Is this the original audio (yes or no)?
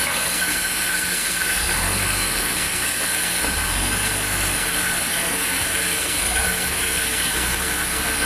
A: no